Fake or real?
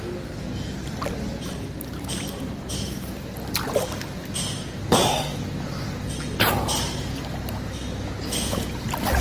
real